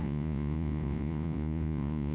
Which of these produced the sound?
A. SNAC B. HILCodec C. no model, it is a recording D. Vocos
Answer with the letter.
D